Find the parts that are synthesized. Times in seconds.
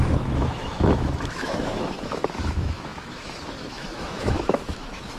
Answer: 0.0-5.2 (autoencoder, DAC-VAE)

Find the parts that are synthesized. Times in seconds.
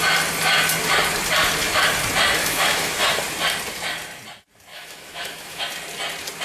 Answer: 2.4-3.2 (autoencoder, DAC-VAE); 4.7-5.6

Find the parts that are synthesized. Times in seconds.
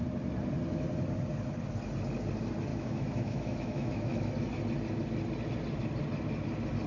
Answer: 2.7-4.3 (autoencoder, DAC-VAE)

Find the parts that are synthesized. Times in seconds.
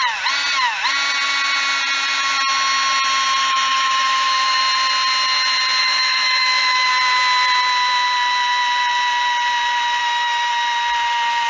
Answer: 3.4-4.6 (autoencoder, DAC-VAE); 5.8-6.9; 10.0-10.5